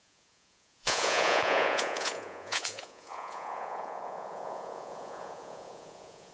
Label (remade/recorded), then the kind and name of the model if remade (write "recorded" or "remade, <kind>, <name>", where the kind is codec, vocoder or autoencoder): remade, vocoder, Vocos